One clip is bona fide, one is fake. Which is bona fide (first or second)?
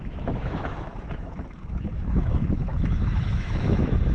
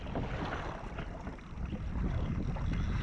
second